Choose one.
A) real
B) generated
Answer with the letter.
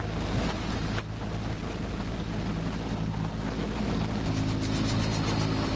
A